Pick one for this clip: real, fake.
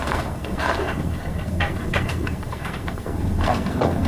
fake